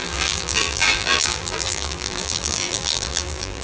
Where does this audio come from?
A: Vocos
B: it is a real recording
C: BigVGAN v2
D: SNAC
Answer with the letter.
C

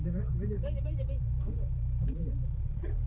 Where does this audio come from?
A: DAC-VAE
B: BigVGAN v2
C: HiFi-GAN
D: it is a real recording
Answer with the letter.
B